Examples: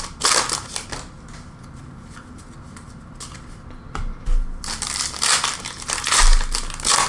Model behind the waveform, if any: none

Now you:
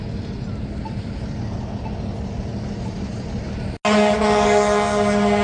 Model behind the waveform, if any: none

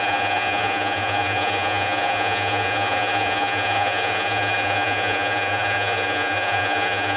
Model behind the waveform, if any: vocoder, Vocos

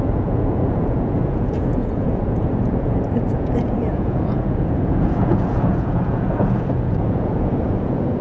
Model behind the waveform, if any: vocoder, Vocos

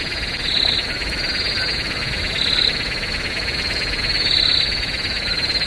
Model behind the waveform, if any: none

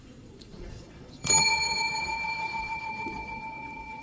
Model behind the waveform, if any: vocoder, Vocos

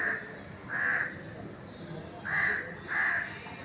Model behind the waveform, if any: none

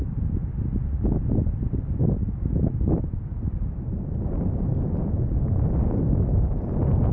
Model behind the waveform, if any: none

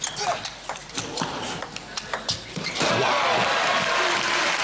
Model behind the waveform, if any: none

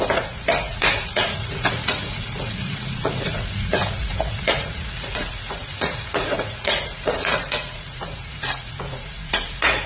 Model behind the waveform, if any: vocoder, Vocos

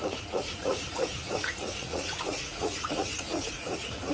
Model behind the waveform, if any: vocoder, Vocos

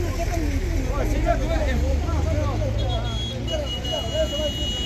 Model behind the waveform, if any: none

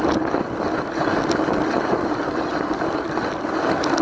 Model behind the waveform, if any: none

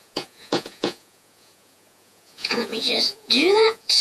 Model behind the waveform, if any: vocoder, Vocos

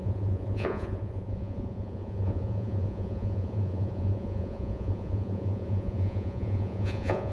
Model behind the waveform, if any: vocoder, Vocos